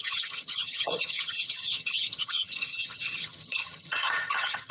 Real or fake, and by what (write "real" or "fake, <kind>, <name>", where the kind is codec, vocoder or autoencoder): fake, vocoder, HiFi-GAN